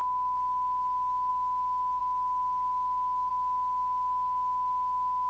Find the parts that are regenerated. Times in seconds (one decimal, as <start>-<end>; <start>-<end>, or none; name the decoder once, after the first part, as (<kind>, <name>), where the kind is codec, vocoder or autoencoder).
none